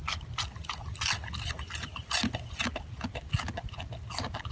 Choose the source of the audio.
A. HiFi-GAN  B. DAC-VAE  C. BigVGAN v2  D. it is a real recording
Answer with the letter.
D